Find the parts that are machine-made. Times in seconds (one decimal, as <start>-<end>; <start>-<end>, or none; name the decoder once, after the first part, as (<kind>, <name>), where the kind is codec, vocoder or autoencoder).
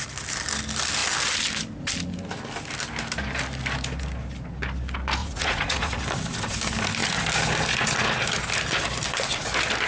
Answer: 5.2-6.0 (vocoder, Vocos)